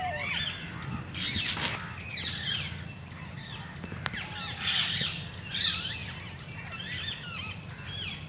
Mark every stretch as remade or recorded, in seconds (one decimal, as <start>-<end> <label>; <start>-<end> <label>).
0.0-8.3 recorded